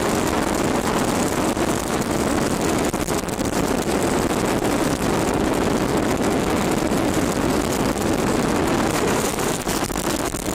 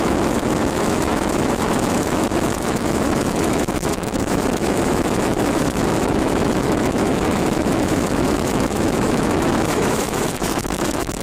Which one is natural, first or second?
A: first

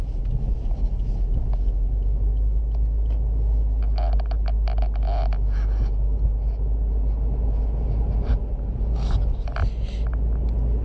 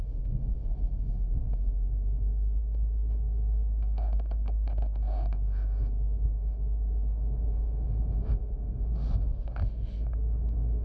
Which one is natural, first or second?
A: first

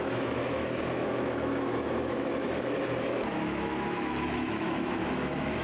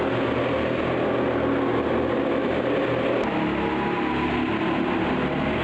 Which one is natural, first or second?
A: second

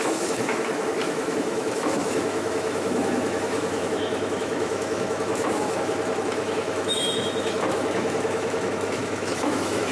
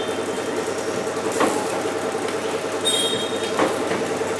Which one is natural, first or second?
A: second